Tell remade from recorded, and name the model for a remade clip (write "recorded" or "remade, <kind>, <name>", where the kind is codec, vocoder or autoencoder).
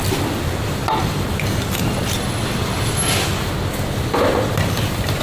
recorded